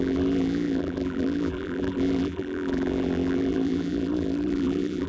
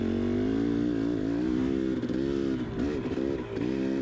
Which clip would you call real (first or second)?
second